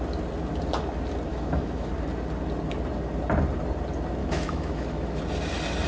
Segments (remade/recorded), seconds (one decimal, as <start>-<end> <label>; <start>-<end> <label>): 0.0-1.3 recorded; 1.3-1.9 remade; 1.9-4.2 recorded; 4.2-5.2 remade; 5.2-5.9 recorded